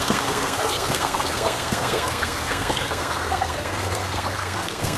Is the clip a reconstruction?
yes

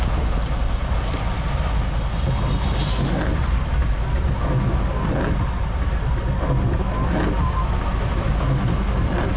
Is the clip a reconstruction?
no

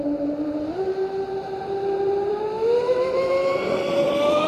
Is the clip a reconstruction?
yes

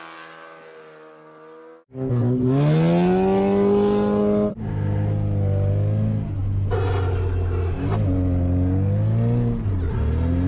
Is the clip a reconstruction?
no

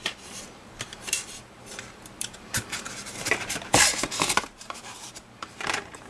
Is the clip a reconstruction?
yes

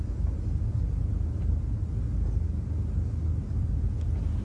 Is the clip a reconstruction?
no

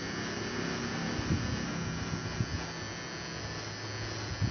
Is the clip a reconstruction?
no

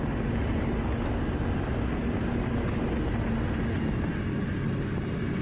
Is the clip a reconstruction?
no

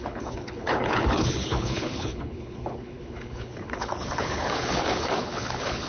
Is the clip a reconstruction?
yes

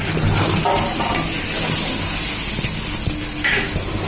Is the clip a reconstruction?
no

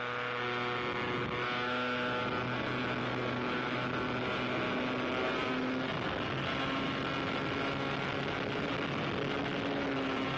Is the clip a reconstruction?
no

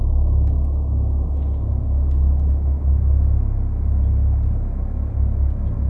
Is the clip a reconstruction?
no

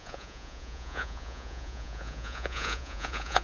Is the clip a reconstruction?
yes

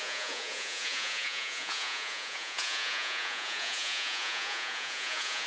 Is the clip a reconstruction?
yes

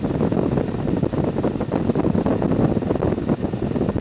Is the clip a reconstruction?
no